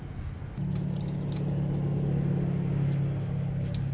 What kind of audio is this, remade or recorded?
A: recorded